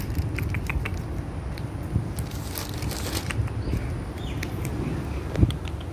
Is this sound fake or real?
real